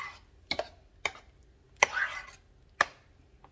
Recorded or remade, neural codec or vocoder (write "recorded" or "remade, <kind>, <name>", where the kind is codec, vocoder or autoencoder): recorded